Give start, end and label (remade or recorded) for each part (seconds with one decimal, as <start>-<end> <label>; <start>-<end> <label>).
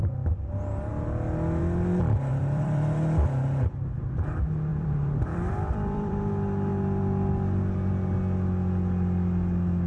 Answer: 0.0-2.3 recorded; 2.3-3.2 remade; 3.2-4.7 recorded; 4.7-6.3 remade; 6.3-9.9 recorded